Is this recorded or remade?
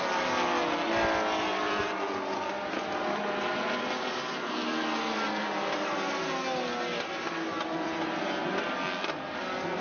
recorded